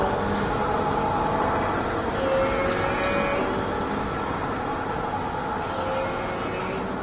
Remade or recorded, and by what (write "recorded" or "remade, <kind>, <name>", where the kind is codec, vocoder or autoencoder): recorded